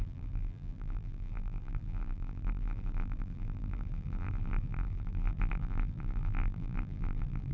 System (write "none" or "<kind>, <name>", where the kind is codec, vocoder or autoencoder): vocoder, BigVGAN v2